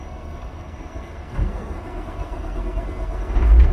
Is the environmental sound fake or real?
fake